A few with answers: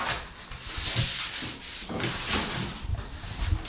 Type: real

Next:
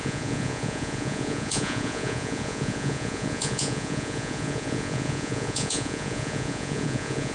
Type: fake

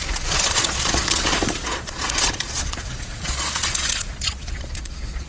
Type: fake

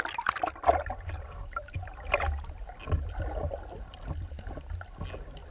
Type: real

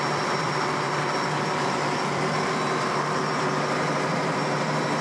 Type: fake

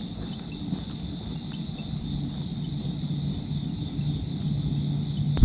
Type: real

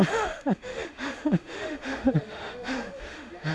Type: fake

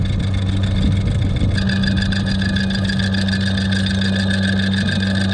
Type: real